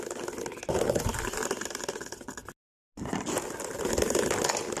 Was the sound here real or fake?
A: real